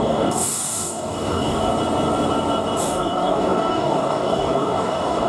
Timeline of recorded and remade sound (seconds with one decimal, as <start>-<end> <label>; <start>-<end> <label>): 0.0-1.7 remade; 1.7-2.8 recorded; 2.8-5.3 remade